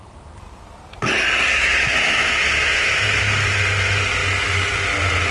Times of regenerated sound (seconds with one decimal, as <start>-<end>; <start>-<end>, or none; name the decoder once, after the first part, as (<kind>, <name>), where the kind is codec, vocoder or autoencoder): 1.5-3.2 (autoencoder, DAC-VAE)